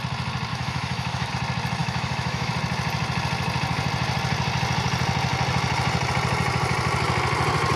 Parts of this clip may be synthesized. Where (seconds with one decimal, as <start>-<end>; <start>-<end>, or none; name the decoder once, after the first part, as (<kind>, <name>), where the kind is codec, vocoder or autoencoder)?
0.5-1.3 (autoencoder, DAC-VAE); 1.8-2.5